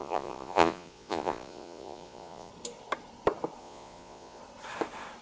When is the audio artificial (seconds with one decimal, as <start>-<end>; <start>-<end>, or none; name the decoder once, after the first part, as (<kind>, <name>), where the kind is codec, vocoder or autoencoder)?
0.0-2.5 (vocoder, Vocos); 3.6-4.4